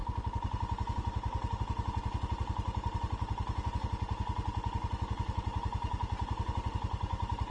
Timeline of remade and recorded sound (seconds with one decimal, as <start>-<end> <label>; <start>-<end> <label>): 0.0-7.5 recorded